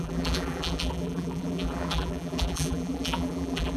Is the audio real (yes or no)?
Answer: no